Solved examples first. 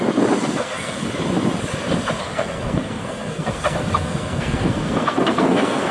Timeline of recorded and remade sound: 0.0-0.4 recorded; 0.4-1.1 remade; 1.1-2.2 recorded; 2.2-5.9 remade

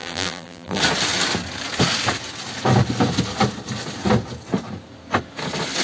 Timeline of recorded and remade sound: 0.0-0.8 remade; 0.8-5.8 recorded

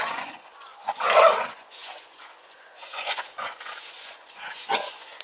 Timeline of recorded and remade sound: 0.0-5.2 remade

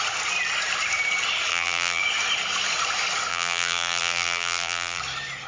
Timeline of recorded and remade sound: 0.0-1.5 recorded; 1.5-2.0 remade; 2.0-3.3 recorded; 3.3-5.0 remade; 5.0-5.5 recorded

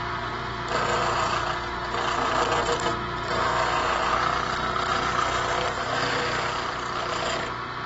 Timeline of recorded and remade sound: 0.0-7.9 recorded

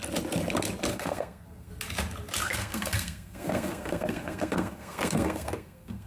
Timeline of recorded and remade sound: 0.0-0.9 recorded; 0.9-1.7 remade; 1.7-2.4 recorded; 2.4-6.1 remade

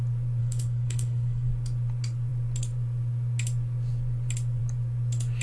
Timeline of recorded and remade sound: 0.0-0.4 recorded; 0.4-1.5 remade; 1.5-5.4 recorded